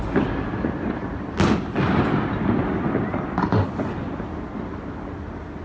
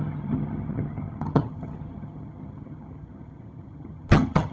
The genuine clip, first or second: first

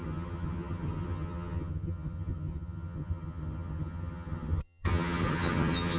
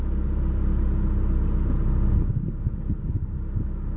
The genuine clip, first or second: second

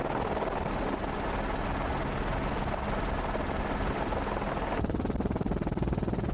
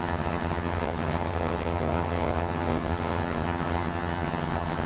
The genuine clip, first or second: first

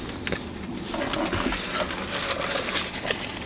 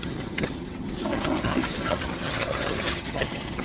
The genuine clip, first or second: first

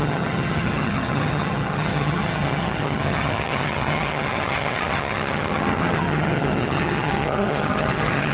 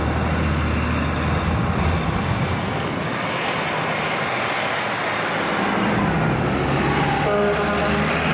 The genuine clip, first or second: second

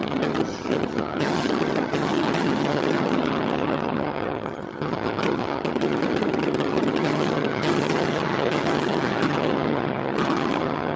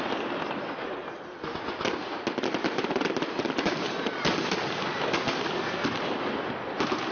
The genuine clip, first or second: second